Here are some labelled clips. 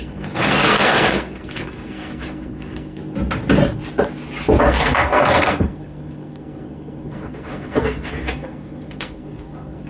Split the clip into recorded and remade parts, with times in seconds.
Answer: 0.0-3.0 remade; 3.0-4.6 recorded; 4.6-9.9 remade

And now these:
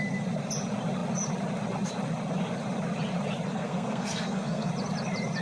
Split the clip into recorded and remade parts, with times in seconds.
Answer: 0.0-3.5 recorded; 3.5-4.7 remade; 4.7-5.4 recorded

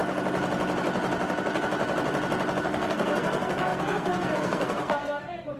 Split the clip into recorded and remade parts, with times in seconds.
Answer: 0.0-2.6 recorded; 2.6-5.6 remade

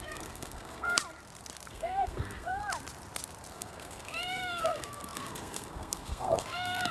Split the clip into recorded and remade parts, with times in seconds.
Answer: 0.0-1.0 remade; 1.0-1.7 recorded; 1.7-2.6 remade; 2.6-3.5 recorded; 3.5-6.9 remade

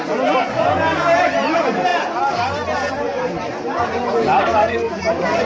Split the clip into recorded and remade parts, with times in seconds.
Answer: 0.0-4.4 recorded; 4.4-4.9 remade; 4.9-5.4 recorded

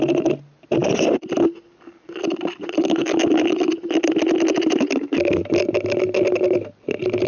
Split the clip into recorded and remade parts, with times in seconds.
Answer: 0.0-7.3 recorded

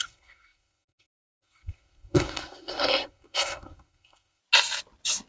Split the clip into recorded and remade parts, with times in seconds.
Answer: 0.0-4.4 remade; 4.4-5.3 recorded